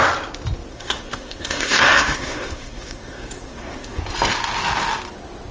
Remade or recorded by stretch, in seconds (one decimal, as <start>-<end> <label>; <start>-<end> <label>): 0.0-0.7 recorded; 0.7-4.0 remade; 4.0-5.5 recorded